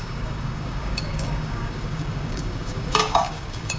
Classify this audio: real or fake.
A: fake